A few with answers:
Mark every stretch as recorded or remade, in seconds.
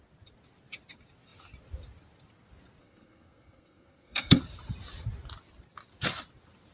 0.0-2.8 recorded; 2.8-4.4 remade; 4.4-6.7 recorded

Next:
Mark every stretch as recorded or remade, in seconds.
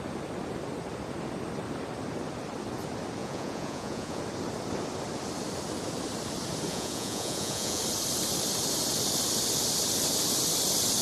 0.0-3.2 recorded; 3.2-4.2 remade; 4.2-6.7 recorded; 6.7-7.8 remade; 7.8-11.0 recorded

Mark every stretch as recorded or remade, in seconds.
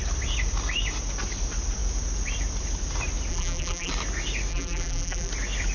0.0-3.3 recorded; 3.3-3.9 remade; 3.9-4.5 recorded; 4.5-5.3 remade; 5.3-5.7 recorded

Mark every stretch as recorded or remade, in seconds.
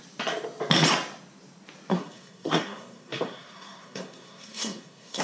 0.0-1.9 recorded; 1.9-5.2 remade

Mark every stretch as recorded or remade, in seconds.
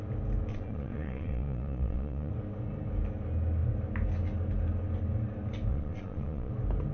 0.0-0.5 recorded; 0.5-2.3 remade; 2.3-5.7 recorded; 5.7-6.5 remade; 6.5-6.9 recorded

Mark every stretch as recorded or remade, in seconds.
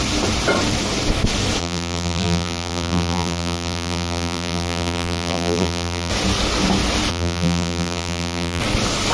0.0-1.6 recorded; 1.6-6.1 remade; 6.1-7.1 recorded; 7.1-8.6 remade; 8.6-9.1 recorded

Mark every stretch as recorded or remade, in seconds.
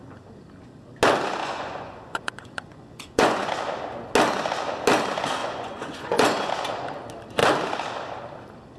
0.0-1.4 recorded; 1.4-3.5 remade; 3.5-5.4 recorded; 5.4-6.5 remade; 6.5-8.8 recorded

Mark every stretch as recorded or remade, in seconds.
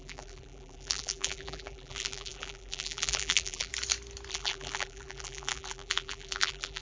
0.0-3.7 remade; 3.7-4.3 recorded; 4.3-6.8 remade